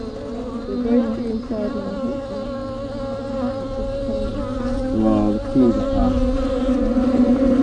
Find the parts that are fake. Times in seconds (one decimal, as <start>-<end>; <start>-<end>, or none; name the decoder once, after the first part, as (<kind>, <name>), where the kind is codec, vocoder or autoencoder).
none